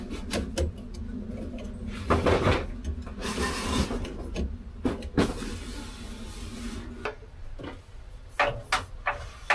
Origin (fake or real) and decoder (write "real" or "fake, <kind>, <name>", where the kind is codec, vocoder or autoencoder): real